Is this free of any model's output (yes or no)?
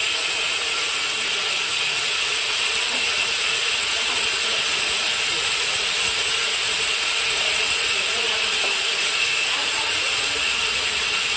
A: no